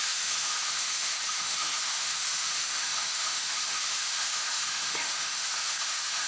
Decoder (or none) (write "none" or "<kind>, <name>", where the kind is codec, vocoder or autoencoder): autoencoder, DAC-VAE